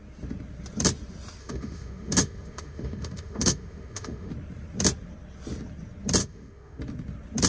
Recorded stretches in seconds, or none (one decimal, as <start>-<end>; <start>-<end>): 0.0-1.4; 4.3-6.2; 6.8-7.5